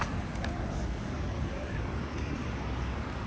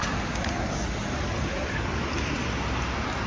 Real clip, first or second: second